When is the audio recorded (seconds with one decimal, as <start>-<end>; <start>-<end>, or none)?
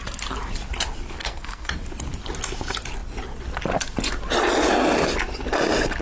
0.0-1.2; 1.7-6.0